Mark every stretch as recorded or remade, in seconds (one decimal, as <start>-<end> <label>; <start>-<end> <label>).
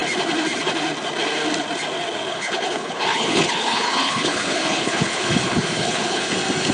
0.0-2.3 recorded; 2.3-6.3 remade; 6.3-6.7 recorded